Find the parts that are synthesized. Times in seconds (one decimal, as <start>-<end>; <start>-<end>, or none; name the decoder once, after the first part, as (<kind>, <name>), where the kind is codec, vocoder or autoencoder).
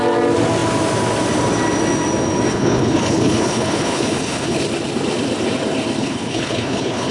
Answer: 2.5-4.6 (codec, HILCodec); 6.0-7.1